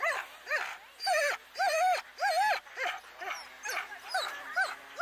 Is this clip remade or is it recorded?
recorded